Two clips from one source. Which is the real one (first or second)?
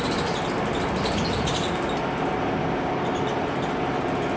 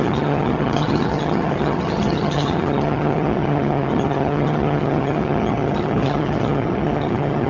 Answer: first